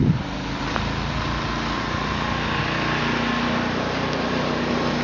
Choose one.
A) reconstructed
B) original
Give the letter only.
B